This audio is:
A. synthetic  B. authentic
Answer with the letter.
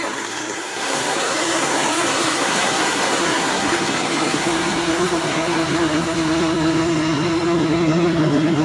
A